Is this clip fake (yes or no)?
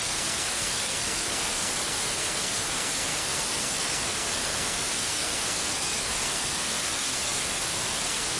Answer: yes